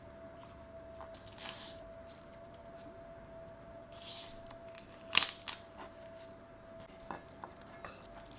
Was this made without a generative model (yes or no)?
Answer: yes